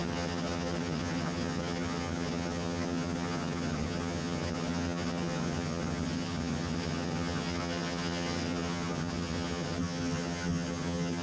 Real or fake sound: fake